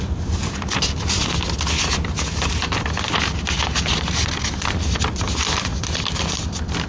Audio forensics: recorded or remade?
recorded